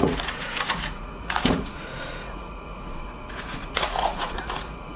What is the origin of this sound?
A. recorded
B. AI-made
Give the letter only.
B